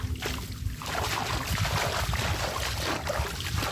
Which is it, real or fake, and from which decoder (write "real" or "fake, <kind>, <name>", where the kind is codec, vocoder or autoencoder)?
real